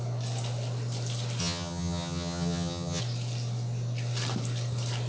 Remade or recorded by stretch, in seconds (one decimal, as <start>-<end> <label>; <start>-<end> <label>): 0.0-1.4 recorded; 1.4-3.0 remade; 3.0-5.1 recorded